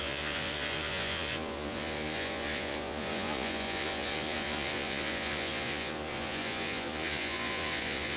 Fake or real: fake